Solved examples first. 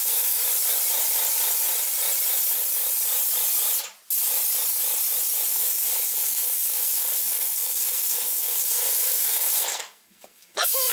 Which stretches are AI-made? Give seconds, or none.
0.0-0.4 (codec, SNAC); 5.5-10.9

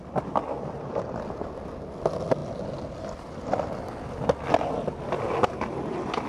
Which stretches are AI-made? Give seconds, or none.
none

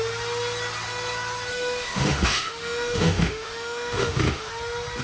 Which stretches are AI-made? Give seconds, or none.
1.5-4.5 (autoencoder, DAC-VAE)

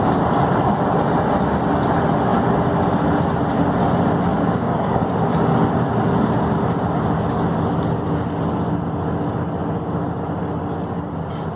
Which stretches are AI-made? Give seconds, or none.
4.3-5.1 (codec, DAC)

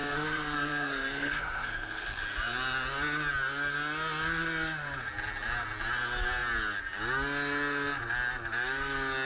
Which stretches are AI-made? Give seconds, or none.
0.0-2.2 (codec, SNAC)

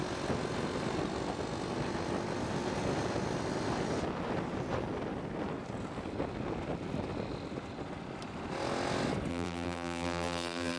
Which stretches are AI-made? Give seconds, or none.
9.3-10.8 (vocoder, BigVGAN v2)

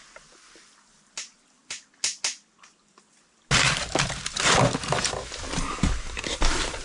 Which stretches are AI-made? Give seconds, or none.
none

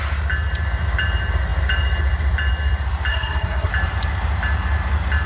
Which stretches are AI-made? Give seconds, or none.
3.1-3.7 (codec, SNAC)